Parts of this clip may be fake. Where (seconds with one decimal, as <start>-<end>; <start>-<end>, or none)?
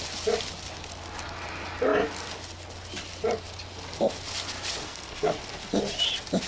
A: 4.8-5.3